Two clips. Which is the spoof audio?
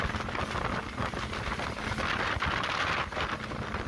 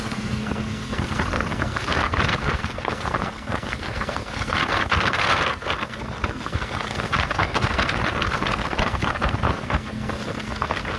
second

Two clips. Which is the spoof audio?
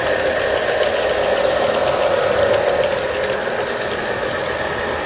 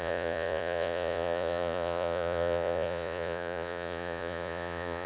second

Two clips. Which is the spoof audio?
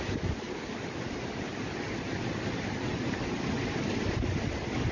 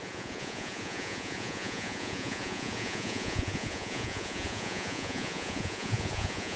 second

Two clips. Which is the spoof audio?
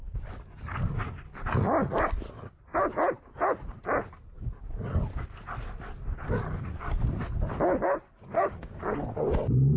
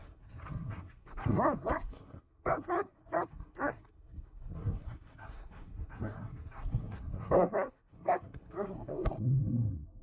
second